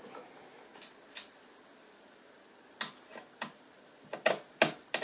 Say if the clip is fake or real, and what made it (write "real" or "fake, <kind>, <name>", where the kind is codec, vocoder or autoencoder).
real